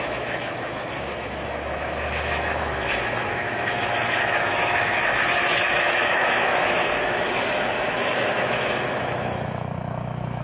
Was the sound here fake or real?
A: fake